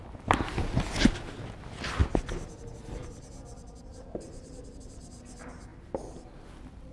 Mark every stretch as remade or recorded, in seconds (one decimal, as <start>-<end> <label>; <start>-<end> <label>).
0.0-6.9 recorded